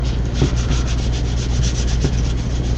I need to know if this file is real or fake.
real